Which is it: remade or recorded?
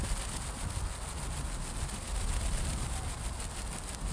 recorded